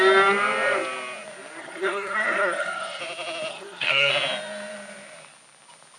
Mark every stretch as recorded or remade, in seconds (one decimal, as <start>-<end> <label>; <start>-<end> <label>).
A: 0.0-1.6 recorded; 1.6-3.0 remade; 3.0-3.5 recorded; 3.5-4.1 remade; 4.1-6.0 recorded